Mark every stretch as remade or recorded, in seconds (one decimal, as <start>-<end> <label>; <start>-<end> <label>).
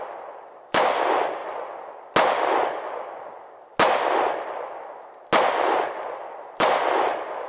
0.0-1.4 remade; 1.4-5.9 recorded; 5.9-7.5 remade